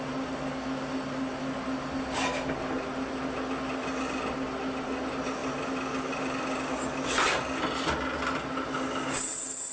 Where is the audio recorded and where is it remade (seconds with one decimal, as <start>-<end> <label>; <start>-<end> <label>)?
0.0-9.7 recorded